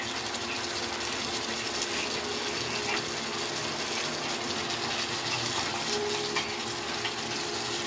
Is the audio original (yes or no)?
yes